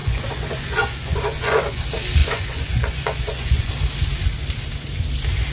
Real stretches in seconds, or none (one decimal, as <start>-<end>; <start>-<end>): 1.8-2.2; 3.7-5.5

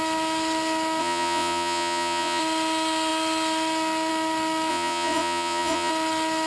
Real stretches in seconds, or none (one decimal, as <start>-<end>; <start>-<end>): 0.0-1.0; 2.4-4.7; 5.9-6.5